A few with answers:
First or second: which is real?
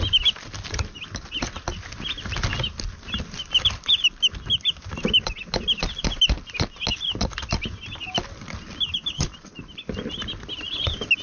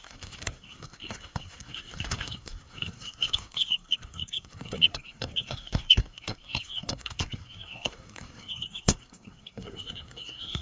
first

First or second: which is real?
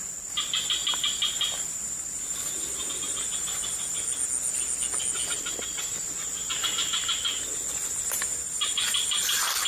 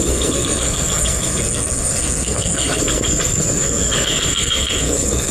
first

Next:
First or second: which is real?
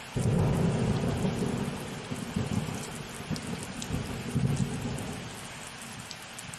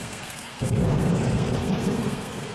first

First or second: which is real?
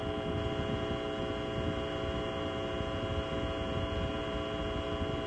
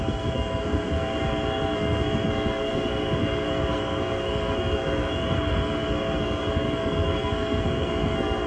first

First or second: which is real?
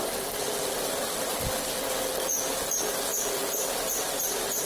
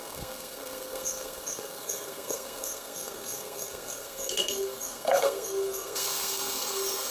first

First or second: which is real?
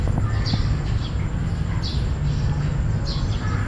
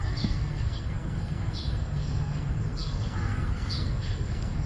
first